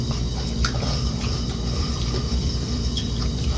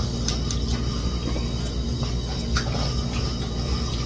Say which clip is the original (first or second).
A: second